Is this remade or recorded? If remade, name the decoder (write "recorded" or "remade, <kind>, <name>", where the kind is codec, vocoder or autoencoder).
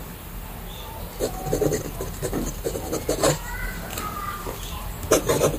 recorded